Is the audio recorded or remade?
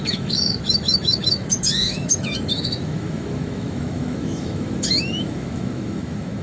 remade